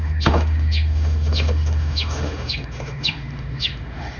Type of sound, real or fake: fake